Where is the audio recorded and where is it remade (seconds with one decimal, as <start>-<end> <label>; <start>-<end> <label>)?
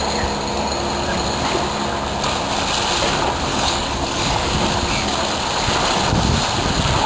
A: 0.0-3.5 recorded; 3.5-4.5 remade; 4.5-7.1 recorded